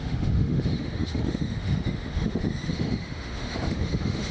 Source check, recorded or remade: remade